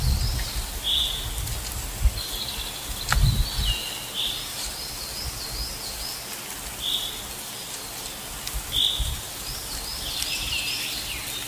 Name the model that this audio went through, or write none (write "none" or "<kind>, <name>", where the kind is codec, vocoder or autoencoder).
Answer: none